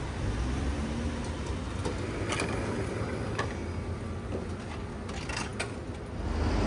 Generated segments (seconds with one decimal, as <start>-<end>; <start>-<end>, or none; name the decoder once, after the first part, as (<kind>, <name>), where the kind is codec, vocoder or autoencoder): none